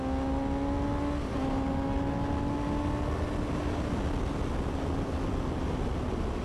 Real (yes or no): yes